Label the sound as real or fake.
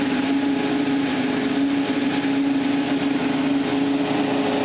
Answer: real